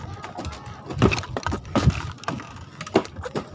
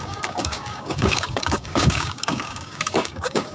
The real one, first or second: first